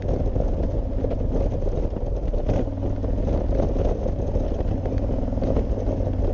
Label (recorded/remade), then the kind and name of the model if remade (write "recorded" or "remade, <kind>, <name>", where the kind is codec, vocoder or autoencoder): recorded